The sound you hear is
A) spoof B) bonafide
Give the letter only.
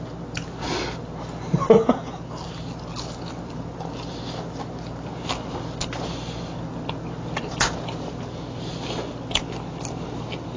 B